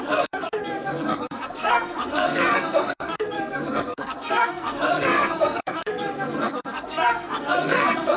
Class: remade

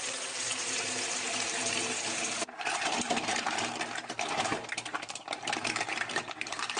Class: remade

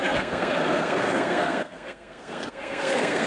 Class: remade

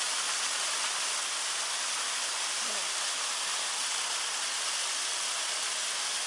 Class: recorded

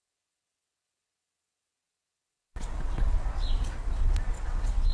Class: remade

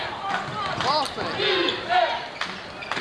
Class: recorded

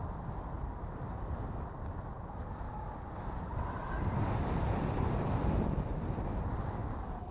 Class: recorded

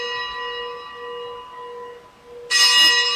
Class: recorded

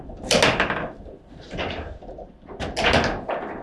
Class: recorded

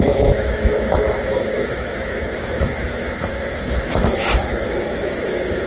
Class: remade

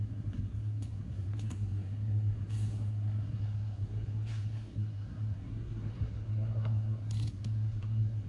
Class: remade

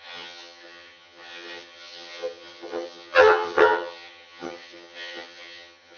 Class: remade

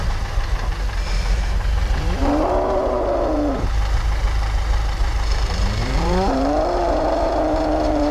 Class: remade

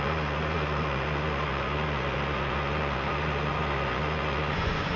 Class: remade